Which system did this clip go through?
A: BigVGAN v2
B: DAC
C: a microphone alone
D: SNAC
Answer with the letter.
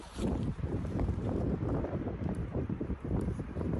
A